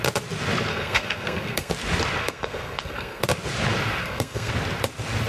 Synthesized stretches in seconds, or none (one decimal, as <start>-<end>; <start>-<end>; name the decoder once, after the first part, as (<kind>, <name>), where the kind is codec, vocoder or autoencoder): 0.7-1.7 (codec, SNAC); 2.2-3.2; 4.0-4.5